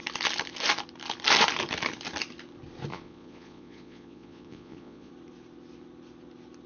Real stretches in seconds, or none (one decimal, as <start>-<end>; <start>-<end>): 0.0-2.9; 5.1-6.7